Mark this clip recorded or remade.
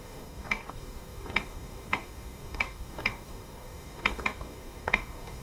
remade